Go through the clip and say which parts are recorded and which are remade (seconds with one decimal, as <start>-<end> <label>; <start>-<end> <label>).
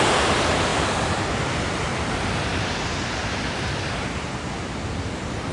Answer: 0.0-5.5 recorded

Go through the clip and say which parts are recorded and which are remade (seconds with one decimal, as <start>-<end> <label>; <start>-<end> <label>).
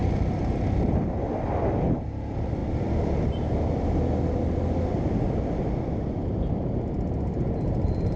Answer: 0.0-8.2 recorded